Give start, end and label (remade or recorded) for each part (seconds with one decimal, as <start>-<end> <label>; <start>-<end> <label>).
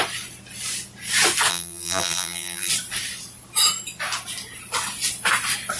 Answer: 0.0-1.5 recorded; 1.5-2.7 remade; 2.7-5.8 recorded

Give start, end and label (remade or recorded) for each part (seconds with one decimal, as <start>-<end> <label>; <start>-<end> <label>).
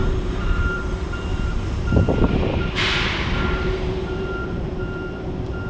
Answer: 0.0-0.6 remade; 0.6-1.3 recorded; 1.3-4.7 remade; 4.7-5.7 recorded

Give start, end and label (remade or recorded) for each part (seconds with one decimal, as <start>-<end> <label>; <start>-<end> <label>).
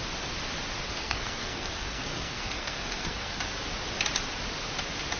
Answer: 0.0-1.0 recorded; 1.0-3.4 remade; 3.4-5.2 recorded